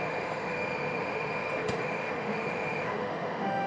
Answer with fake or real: fake